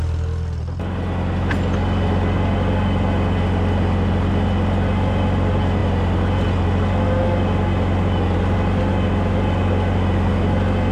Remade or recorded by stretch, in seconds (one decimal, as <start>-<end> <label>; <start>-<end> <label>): 0.0-10.9 recorded